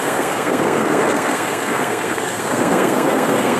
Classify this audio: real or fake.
fake